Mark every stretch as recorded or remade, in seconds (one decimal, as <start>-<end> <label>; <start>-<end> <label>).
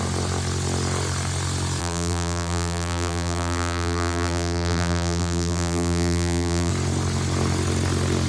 0.0-1.8 recorded; 1.8-6.7 remade; 6.7-8.3 recorded